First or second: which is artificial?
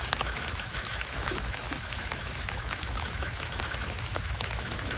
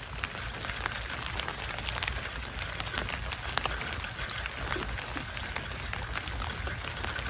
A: first